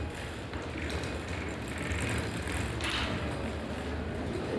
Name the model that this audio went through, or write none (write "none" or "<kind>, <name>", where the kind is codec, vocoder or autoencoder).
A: none